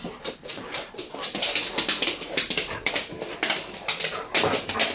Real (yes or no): yes